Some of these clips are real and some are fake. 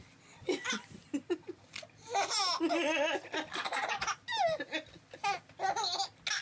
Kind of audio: real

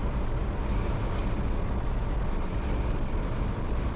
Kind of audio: real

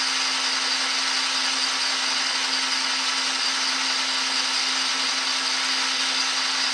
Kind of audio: real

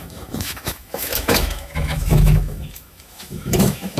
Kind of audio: fake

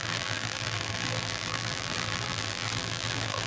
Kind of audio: fake